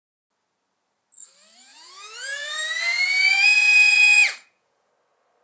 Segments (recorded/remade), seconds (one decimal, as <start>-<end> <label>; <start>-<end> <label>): 0.0-1.7 recorded; 1.7-4.9 remade; 4.9-5.4 recorded